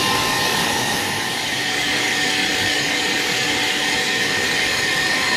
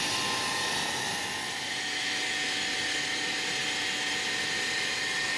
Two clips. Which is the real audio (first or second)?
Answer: second